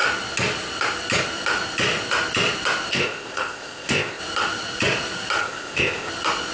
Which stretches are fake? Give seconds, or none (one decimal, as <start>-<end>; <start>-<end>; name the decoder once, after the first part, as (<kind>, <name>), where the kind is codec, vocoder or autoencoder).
2.9-4.2 (codec, ZipCodec); 5.4-6.1